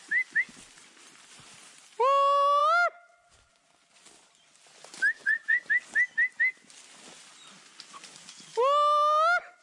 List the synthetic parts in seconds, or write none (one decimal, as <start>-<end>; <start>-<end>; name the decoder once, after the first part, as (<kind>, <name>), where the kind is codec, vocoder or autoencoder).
5.2-5.7 (vocoder, Vocos)